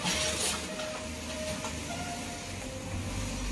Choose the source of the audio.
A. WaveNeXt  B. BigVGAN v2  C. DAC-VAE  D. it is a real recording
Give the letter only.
D